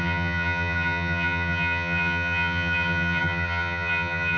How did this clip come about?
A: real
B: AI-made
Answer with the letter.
B